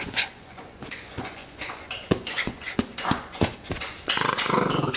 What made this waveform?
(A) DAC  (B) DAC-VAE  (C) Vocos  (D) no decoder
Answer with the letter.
C